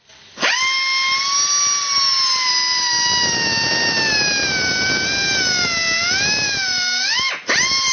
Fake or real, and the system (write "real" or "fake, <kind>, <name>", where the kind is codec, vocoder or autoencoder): real